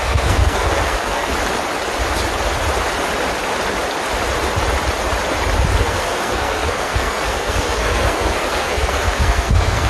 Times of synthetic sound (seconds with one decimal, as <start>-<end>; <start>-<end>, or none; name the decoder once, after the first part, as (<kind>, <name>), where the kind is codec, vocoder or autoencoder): 0.0-1.3 (codec, SNAC); 5.8-9.9